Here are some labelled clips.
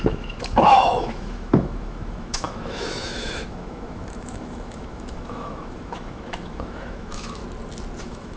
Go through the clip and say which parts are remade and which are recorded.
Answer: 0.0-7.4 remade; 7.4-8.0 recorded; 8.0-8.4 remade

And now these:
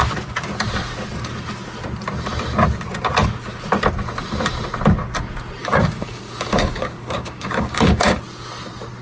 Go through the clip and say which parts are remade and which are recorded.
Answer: 0.0-5.6 recorded; 5.6-8.2 remade; 8.2-9.0 recorded